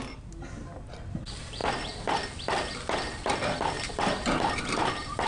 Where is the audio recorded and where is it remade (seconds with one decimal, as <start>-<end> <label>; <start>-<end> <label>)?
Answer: 0.0-5.3 recorded